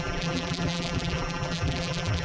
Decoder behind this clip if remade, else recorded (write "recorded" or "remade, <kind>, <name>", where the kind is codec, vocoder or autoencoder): remade, vocoder, BigVGAN v2